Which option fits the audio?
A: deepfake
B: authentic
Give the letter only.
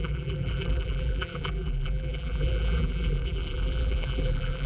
A